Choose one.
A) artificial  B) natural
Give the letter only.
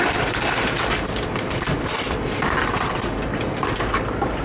A